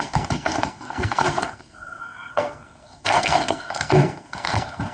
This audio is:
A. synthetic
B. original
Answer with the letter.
A